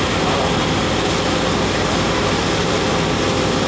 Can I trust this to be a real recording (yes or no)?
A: yes